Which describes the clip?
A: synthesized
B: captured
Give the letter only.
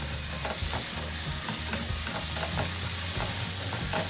B